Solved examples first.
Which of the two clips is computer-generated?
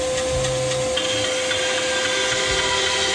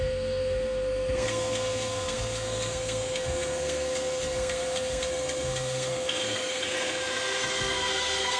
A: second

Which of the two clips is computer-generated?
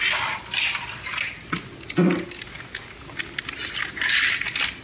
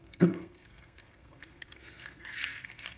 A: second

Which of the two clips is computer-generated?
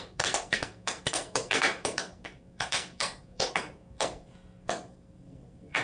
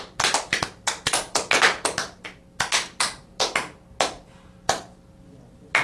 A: first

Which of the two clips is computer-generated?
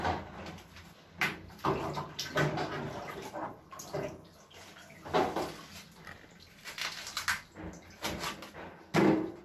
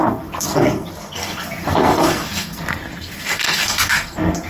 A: second